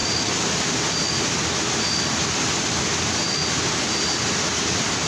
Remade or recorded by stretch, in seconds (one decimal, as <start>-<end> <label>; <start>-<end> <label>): 0.0-5.1 recorded